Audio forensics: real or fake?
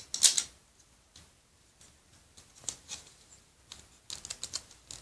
real